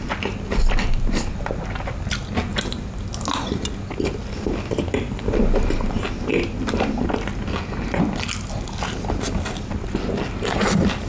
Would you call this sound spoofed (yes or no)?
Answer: no